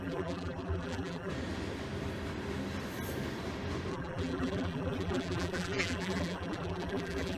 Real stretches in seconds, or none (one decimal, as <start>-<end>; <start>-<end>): 1.3-3.9